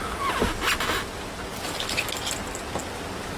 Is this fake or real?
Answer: real